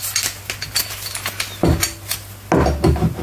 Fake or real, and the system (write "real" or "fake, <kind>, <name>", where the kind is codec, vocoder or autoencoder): real